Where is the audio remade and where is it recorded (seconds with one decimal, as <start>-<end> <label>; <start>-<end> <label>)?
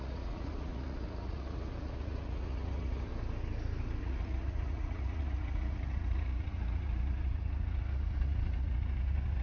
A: 0.0-3.1 remade; 3.1-4.0 recorded; 4.0-9.4 remade